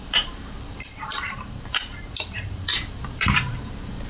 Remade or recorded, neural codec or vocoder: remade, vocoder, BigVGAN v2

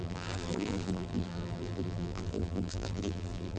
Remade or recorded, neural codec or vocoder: remade, vocoder, BigVGAN v2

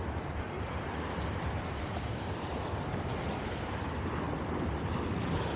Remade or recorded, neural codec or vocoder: remade, vocoder, BigVGAN v2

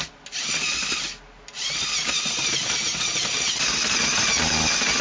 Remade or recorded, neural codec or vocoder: recorded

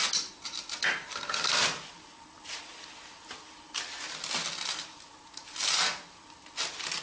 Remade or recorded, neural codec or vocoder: recorded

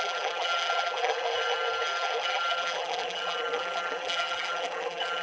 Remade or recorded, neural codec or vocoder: remade, vocoder, BigVGAN v2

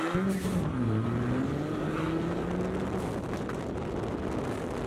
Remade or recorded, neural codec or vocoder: recorded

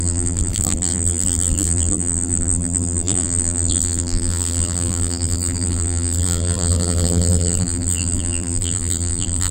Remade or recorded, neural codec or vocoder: remade, vocoder, BigVGAN v2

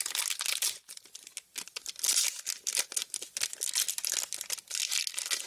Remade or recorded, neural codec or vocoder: recorded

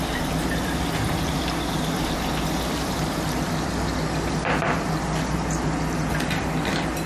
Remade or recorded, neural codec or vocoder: remade, vocoder, BigVGAN v2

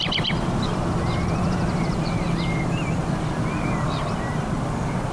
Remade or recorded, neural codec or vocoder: remade, vocoder, BigVGAN v2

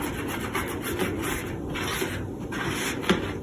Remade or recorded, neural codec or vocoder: recorded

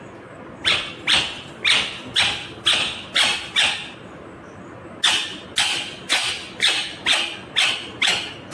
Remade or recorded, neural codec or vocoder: recorded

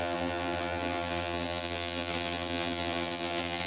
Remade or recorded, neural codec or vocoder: remade, vocoder, BigVGAN v2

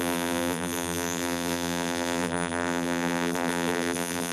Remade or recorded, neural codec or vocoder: remade, vocoder, BigVGAN v2